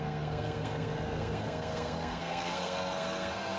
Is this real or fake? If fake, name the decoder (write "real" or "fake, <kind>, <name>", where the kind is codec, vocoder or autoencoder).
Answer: fake, codec, SNAC